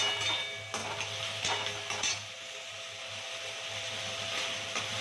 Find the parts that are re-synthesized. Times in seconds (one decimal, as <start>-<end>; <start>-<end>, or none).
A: none